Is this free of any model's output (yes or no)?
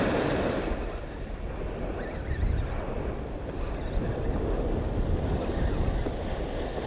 yes